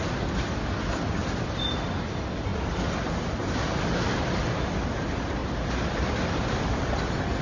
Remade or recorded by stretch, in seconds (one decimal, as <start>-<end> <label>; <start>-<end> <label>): 0.0-2.5 recorded; 2.5-4.6 remade; 4.6-5.4 recorded; 5.4-7.4 remade

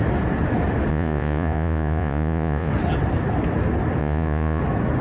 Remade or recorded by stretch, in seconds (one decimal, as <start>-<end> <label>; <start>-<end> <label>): 0.0-0.9 recorded; 0.9-2.7 remade; 2.7-4.0 recorded; 4.0-4.6 remade; 4.6-5.0 recorded

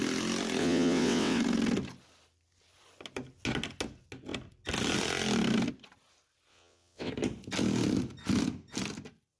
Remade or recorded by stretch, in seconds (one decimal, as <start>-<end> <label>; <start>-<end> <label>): 0.0-0.6 recorded; 0.6-1.4 remade; 1.4-6.5 recorded; 6.5-7.1 remade; 7.1-9.4 recorded